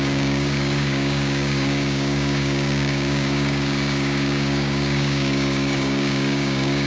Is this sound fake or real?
fake